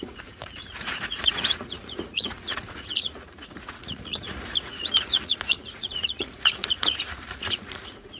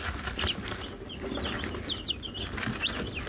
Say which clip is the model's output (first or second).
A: first